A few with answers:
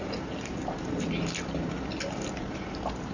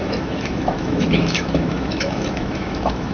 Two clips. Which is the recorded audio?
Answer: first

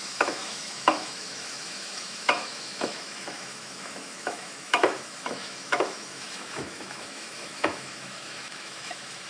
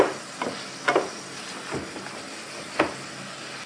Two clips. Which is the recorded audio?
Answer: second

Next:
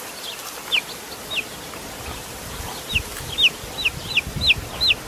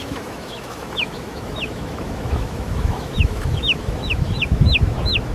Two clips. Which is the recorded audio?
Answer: first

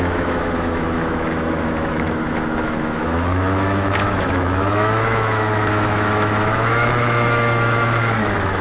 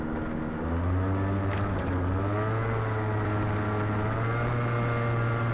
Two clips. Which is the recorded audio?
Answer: second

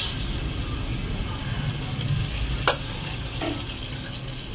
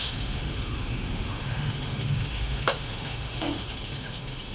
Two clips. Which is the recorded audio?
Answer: first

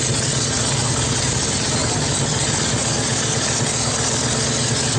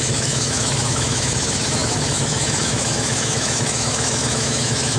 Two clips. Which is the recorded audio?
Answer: first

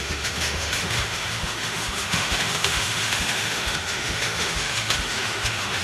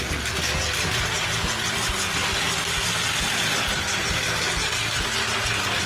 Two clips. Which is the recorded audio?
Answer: second